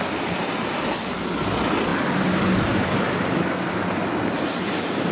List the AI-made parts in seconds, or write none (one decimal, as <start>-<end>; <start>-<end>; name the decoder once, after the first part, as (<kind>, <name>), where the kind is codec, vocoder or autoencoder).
1.9-5.1 (vocoder, BigVGAN v2)